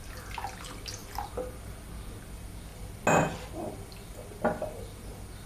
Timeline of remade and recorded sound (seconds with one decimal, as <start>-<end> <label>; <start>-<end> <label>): 0.0-5.5 recorded